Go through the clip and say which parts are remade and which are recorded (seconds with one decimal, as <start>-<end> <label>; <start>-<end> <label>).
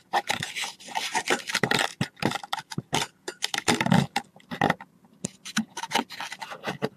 0.0-7.0 recorded